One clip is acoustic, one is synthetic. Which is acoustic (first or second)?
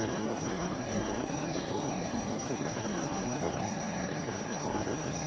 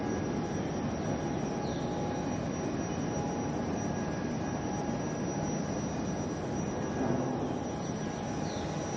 second